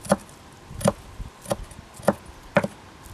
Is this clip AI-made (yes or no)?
no